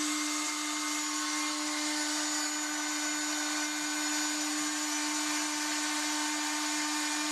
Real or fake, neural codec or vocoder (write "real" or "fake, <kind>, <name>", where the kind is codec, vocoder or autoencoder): real